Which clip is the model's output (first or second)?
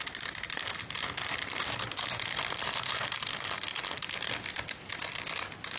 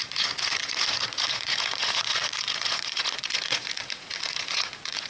second